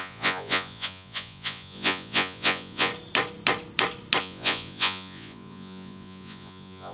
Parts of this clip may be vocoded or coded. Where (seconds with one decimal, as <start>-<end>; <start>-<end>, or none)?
0.0-2.9; 4.2-6.9